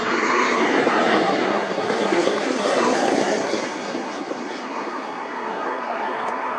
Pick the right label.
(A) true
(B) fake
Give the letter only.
B